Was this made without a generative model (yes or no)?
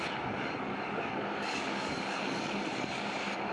no